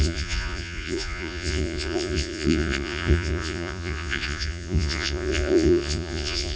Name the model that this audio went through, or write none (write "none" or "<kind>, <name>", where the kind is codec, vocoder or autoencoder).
vocoder, Vocos